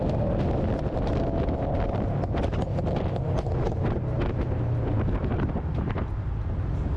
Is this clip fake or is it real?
real